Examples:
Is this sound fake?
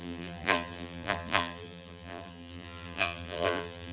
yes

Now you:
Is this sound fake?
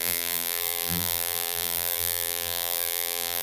yes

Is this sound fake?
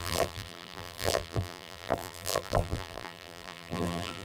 yes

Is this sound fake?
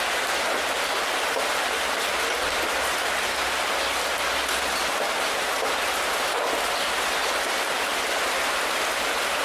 no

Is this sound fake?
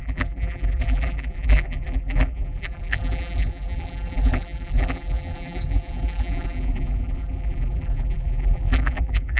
yes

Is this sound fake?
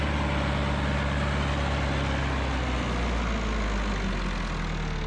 no